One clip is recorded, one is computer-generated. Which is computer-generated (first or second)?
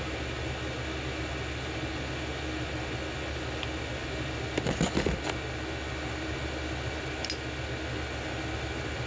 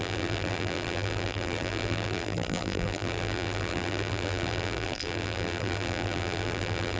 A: second